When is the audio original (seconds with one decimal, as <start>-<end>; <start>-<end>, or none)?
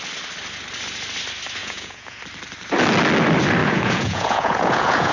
0.0-1.6; 2.2-3.6